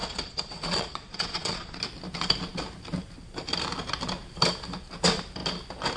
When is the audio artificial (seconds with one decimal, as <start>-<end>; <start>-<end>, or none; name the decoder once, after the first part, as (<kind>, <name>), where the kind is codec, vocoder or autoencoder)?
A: 0.0-1.8 (vocoder, Vocos)